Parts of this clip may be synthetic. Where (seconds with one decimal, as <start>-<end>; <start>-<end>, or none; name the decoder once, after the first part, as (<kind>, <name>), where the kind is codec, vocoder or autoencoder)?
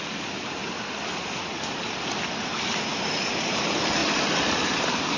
4.0-5.2 (vocoder, BigVGAN v2)